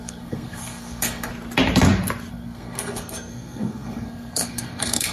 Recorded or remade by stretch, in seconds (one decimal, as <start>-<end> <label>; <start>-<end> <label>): 0.0-1.3 remade; 1.3-2.3 recorded; 2.3-5.1 remade